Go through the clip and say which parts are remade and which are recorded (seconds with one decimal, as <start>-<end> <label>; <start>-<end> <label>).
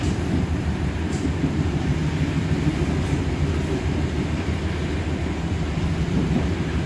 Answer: 0.0-2.0 remade; 2.0-6.1 recorded; 6.1-6.9 remade